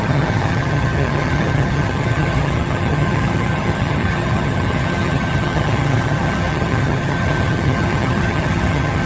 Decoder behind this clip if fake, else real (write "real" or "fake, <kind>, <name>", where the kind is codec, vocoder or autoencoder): fake, vocoder, HiFi-GAN